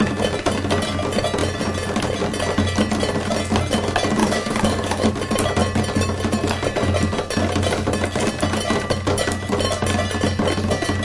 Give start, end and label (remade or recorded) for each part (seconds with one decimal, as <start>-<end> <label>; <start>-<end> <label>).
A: 0.0-4.2 recorded; 4.2-5.1 remade; 5.1-11.0 recorded